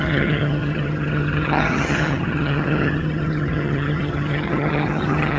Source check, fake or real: fake